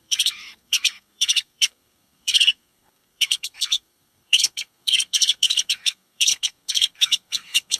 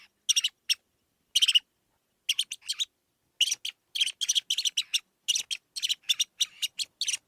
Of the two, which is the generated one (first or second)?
first